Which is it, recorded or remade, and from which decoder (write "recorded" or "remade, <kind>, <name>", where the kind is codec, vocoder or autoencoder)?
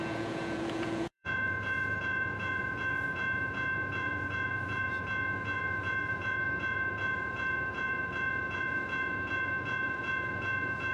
remade, vocoder, Vocos